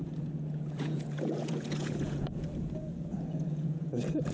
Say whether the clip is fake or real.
fake